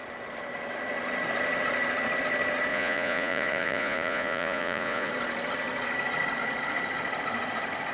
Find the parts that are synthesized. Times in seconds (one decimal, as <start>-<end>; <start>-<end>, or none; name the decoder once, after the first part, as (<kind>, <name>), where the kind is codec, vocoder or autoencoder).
2.7-5.1 (vocoder, Vocos)